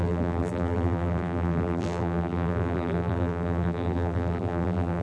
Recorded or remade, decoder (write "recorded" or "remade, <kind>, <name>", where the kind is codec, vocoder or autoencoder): remade, vocoder, BigVGAN v2